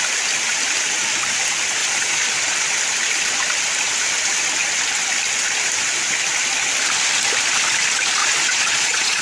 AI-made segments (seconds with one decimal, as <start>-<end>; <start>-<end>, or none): 1.8-2.7; 8.2-9.2